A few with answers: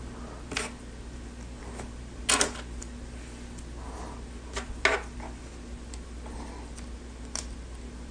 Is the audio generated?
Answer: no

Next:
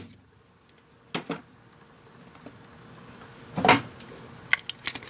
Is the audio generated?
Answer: no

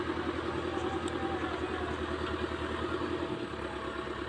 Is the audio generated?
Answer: no